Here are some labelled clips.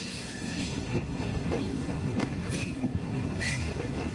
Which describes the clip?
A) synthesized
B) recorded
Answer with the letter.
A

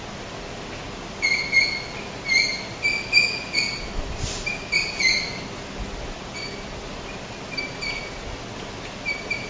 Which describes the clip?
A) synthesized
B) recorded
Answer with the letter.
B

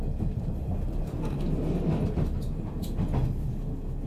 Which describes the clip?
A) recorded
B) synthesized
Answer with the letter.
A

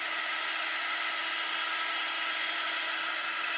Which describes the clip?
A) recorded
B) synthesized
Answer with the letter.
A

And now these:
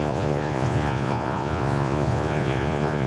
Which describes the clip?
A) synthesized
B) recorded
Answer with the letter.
A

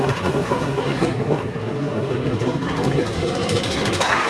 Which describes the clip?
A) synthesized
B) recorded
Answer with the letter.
A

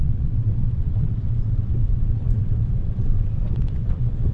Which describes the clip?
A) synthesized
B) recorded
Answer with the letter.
A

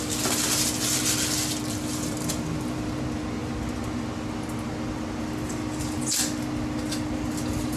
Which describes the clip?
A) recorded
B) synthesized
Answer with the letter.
A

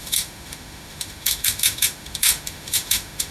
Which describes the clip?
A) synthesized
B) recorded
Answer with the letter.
A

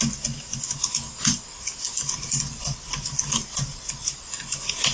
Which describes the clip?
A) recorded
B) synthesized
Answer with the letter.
A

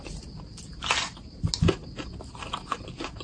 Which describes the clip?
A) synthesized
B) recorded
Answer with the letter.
B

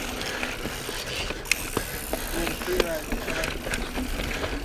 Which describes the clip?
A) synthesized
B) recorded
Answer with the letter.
B